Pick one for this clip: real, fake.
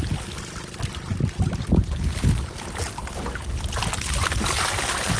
real